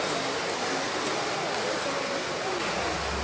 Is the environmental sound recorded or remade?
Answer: recorded